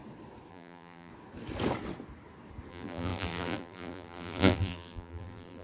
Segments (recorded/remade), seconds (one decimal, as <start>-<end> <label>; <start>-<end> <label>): 0.0-0.5 recorded; 0.5-1.1 remade; 1.1-2.7 recorded; 2.7-5.6 remade